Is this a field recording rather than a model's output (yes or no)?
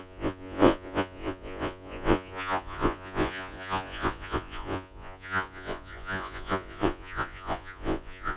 no